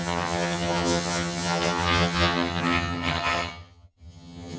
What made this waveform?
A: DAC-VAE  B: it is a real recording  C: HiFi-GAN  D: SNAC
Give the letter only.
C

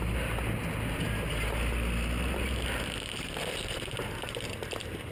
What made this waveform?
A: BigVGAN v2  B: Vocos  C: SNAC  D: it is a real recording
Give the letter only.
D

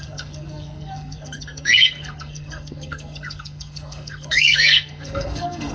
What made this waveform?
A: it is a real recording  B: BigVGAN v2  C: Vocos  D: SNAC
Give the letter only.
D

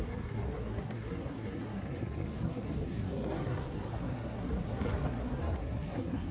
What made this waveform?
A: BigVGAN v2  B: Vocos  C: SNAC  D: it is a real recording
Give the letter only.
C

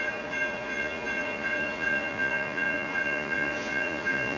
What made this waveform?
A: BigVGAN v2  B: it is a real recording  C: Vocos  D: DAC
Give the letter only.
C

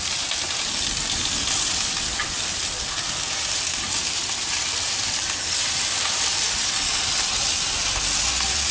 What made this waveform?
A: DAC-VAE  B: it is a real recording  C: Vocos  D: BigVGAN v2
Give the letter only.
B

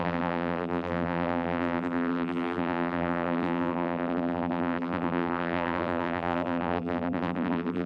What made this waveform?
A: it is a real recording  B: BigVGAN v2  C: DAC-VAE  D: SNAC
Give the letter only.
B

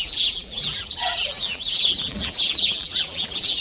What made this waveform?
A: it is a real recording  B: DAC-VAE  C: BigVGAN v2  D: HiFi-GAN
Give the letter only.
C